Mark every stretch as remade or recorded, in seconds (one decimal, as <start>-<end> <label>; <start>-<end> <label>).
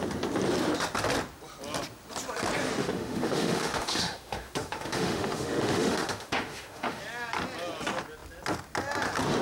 0.0-2.8 recorded; 2.8-7.0 remade; 7.0-9.4 recorded